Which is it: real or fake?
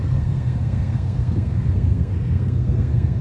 fake